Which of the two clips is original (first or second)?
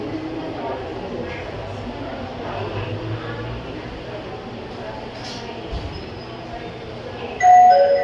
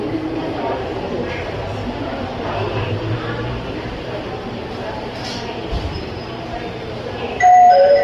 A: first